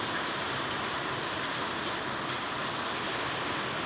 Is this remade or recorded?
recorded